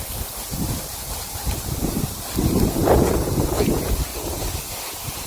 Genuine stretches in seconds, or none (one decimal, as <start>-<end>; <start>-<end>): 2.8-3.6